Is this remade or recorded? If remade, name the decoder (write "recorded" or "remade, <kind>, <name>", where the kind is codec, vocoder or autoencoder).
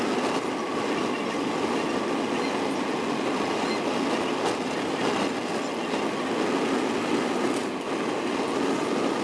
recorded